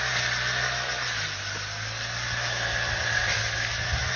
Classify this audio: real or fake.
real